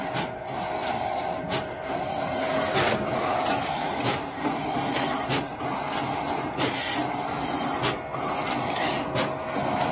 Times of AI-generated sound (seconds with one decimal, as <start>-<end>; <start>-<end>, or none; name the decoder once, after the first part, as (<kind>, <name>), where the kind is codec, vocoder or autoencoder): 0.8-5.6 (vocoder, BigVGAN v2)